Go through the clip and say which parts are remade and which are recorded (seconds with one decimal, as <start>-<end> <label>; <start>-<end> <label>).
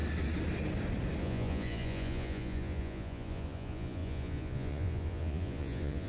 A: 0.0-1.2 recorded; 1.2-6.1 remade